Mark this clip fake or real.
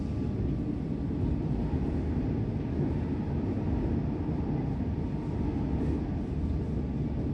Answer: real